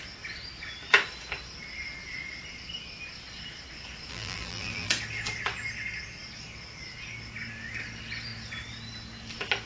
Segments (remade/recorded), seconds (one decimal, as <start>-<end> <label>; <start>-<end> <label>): 0.0-4.1 recorded; 4.1-4.9 remade; 4.9-9.7 recorded